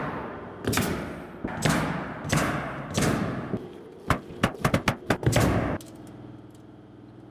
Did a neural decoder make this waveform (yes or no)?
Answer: no